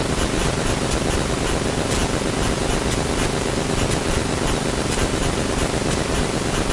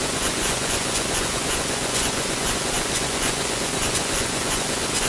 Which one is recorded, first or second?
first